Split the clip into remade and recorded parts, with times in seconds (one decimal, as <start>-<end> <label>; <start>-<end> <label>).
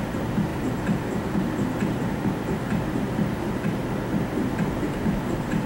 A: 0.0-3.8 remade; 3.8-4.6 recorded; 4.6-5.7 remade